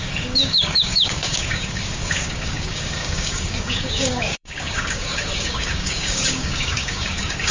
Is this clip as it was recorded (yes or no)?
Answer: no